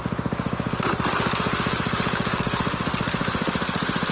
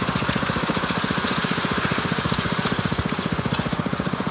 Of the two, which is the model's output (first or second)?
second